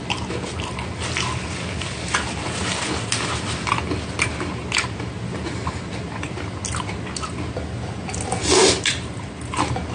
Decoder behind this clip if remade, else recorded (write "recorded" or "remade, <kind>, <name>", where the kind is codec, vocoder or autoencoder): recorded